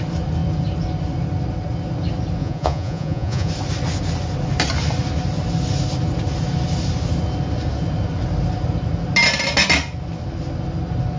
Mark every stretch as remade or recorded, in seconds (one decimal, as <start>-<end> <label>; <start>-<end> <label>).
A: 0.0-2.4 recorded; 2.4-3.5 remade; 3.5-11.2 recorded

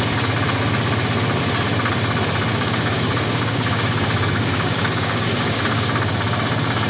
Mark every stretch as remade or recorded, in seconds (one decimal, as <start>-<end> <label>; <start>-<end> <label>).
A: 0.0-2.5 recorded; 2.5-5.8 remade; 5.8-6.9 recorded

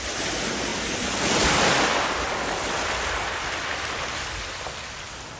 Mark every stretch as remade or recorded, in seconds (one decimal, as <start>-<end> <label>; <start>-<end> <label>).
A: 0.0-5.4 recorded

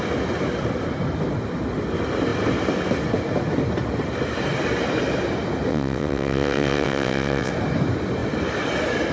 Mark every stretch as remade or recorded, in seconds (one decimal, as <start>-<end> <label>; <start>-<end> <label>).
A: 0.0-5.7 recorded; 5.7-7.5 remade; 7.5-9.1 recorded

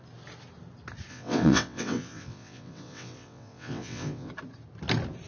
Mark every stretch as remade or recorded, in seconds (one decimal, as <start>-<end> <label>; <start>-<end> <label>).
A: 0.0-1.1 recorded; 1.1-4.3 remade; 4.3-5.3 recorded

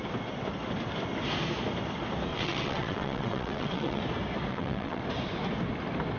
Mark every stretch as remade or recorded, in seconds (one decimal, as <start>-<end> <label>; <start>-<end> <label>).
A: 0.0-2.3 recorded; 2.3-4.0 remade; 4.0-4.5 recorded; 4.5-5.0 remade; 5.0-6.2 recorded